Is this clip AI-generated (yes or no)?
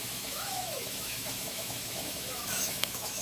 yes